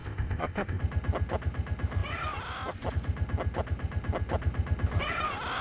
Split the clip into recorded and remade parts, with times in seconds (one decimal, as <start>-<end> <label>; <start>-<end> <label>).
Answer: 0.0-0.8 remade; 0.8-5.6 recorded